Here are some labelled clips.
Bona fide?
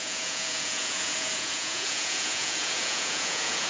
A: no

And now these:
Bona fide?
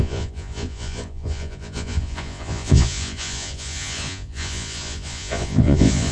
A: no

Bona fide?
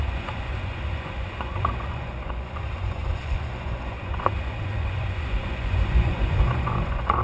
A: no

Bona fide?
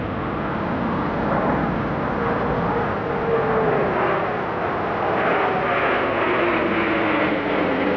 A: yes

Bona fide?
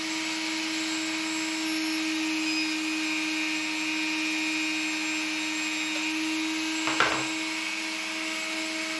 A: yes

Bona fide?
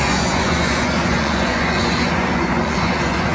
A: no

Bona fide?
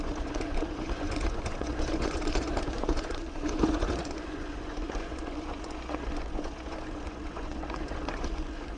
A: no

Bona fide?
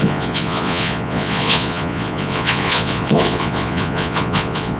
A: no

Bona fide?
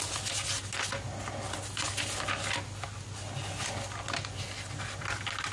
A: yes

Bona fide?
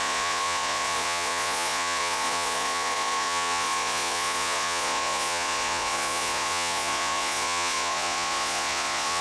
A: no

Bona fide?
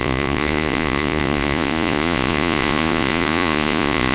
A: no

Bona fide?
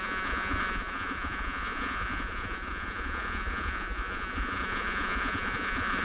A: no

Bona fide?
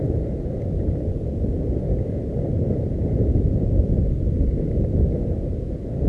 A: yes